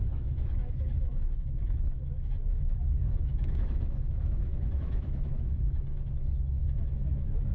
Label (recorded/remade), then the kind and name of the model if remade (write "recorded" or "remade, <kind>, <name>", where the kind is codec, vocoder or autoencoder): remade, autoencoder, DAC-VAE